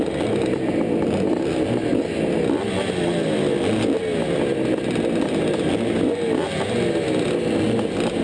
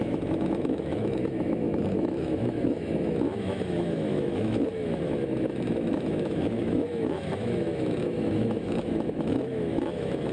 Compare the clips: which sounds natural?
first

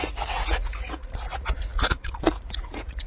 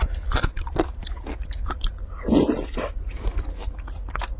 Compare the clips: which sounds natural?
second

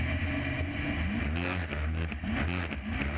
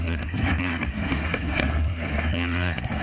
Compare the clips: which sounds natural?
first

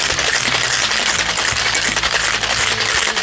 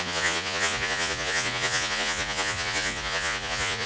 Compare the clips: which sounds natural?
first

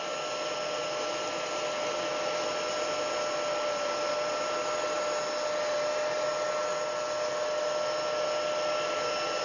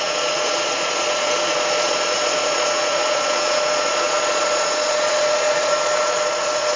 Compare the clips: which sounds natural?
first